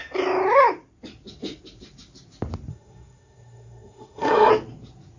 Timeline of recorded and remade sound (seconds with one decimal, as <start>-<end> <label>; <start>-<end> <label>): 0.0-2.7 recorded; 2.7-4.5 remade; 4.5-5.2 recorded